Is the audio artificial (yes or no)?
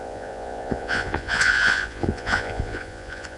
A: yes